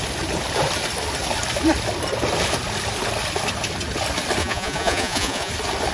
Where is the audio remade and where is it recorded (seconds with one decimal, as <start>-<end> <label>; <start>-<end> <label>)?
0.0-4.4 recorded; 4.4-5.5 remade; 5.5-5.9 recorded